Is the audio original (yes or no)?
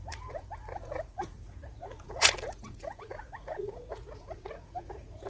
no